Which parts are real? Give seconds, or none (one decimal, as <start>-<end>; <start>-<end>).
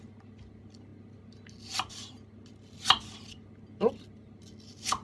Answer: 0.0-5.0